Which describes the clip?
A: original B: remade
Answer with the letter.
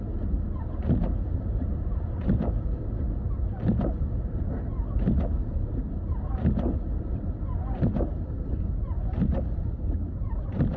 A